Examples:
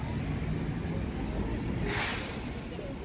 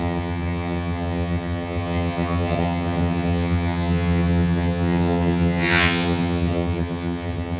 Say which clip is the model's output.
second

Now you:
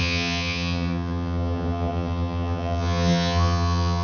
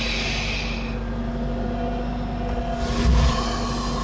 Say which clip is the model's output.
first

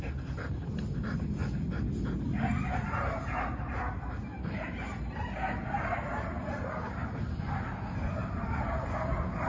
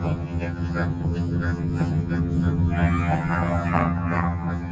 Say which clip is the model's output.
second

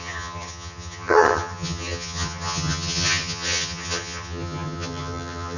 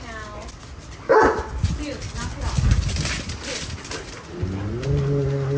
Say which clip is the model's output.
first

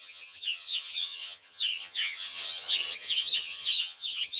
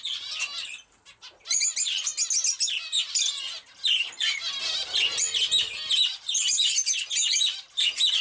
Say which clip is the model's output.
first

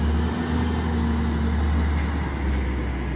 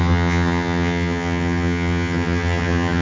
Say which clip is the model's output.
second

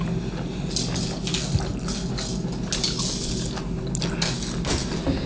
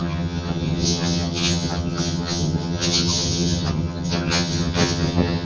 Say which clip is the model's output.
second